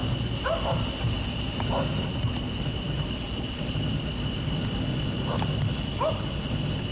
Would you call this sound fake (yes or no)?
no